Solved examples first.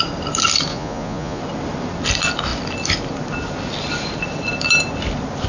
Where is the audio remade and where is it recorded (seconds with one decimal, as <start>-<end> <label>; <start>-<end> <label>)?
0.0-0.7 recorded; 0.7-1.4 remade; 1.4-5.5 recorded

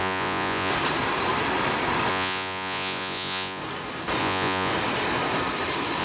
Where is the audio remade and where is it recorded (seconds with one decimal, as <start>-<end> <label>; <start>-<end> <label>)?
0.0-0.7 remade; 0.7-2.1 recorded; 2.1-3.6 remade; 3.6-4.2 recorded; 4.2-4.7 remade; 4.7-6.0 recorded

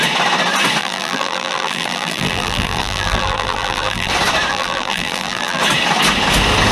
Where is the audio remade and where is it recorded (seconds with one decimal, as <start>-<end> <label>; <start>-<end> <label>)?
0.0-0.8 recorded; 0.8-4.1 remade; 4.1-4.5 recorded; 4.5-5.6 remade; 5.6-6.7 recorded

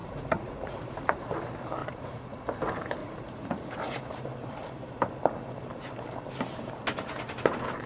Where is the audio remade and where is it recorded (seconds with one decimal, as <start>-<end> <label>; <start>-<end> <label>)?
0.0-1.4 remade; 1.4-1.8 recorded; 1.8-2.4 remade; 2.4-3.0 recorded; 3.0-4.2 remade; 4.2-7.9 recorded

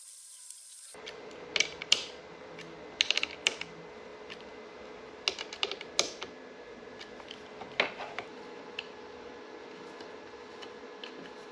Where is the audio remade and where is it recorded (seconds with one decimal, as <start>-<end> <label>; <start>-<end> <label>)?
0.0-11.5 recorded

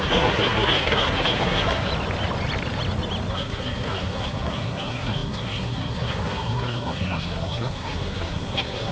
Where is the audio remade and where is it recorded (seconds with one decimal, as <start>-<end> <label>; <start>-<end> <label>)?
0.0-1.9 remade; 1.9-3.3 recorded; 3.3-8.9 remade

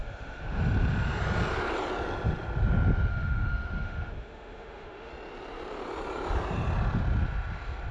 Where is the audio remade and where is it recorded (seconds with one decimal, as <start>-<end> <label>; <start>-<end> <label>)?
0.0-0.6 remade; 0.6-3.1 recorded; 3.1-5.1 remade; 5.1-7.9 recorded